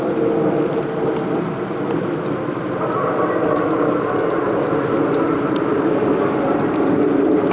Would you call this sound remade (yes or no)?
no